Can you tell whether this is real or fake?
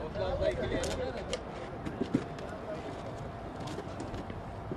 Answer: real